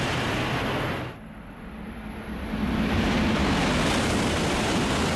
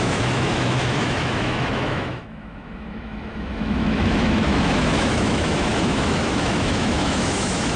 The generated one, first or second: second